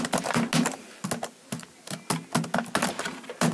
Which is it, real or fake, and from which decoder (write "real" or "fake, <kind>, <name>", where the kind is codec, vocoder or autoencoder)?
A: real